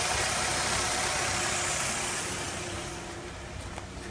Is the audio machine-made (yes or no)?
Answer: no